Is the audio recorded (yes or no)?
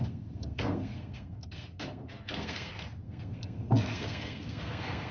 no